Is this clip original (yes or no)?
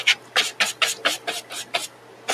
yes